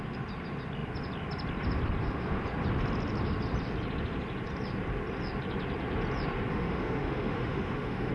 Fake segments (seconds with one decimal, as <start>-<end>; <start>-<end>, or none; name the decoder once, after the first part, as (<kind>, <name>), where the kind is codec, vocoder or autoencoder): 6.5-8.1 (autoencoder, DAC-VAE)